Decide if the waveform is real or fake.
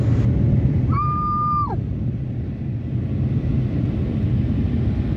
real